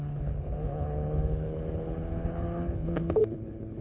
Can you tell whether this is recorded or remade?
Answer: remade